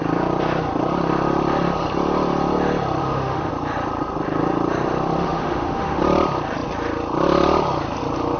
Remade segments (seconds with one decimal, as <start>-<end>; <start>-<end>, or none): 3.0-3.5; 5.2-6.0